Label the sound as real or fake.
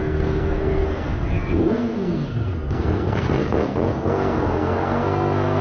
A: fake